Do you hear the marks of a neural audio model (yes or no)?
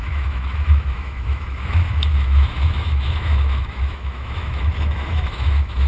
yes